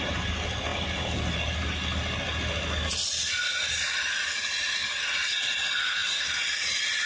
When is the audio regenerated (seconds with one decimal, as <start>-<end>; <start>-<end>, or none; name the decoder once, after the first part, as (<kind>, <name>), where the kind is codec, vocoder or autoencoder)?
none